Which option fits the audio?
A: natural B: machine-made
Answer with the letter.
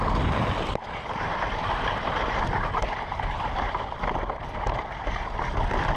A